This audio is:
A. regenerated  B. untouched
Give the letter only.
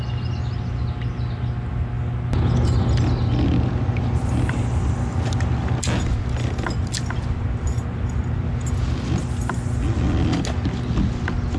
B